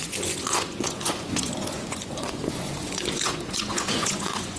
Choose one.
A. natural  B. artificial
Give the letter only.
B